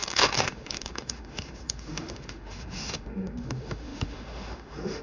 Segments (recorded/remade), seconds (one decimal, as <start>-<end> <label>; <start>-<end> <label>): 0.0-5.0 remade